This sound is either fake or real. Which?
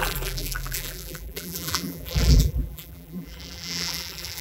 fake